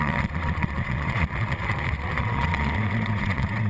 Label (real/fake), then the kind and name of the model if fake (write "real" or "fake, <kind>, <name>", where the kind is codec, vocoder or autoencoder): fake, vocoder, Vocos